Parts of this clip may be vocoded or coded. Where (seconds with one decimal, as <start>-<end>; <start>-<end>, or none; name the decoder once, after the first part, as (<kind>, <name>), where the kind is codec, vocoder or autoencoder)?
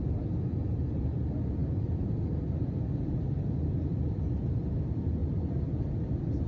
none